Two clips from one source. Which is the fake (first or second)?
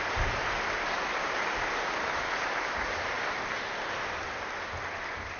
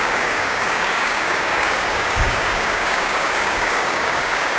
second